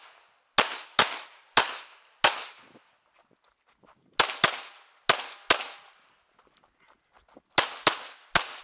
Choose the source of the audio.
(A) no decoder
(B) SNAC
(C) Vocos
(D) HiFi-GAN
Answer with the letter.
A